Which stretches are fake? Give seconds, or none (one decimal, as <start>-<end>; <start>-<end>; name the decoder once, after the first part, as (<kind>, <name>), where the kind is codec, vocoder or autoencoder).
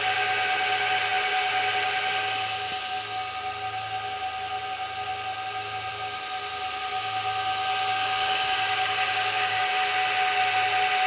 7.9-9.7 (codec, DAC)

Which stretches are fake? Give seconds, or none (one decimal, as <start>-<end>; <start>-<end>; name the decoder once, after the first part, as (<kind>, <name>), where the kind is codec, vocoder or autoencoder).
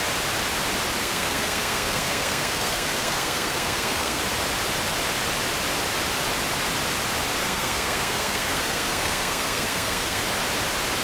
1.0-4.2 (codec, SNAC); 7.4-10.2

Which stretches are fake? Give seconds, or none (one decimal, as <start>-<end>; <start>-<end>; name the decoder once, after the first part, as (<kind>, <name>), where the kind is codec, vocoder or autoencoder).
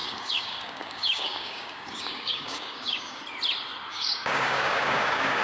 0.0-3.2 (codec, DAC); 3.9-5.4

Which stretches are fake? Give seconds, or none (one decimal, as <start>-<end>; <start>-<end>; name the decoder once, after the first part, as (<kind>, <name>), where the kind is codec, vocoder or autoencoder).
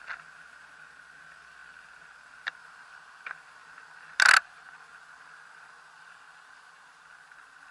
none